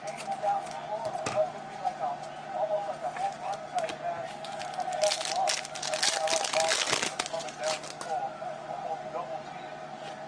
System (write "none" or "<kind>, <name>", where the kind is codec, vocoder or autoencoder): none